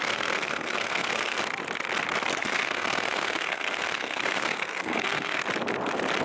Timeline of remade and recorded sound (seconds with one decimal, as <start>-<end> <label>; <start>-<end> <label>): 0.0-1.4 remade; 1.4-2.4 recorded; 2.4-5.4 remade; 5.4-6.2 recorded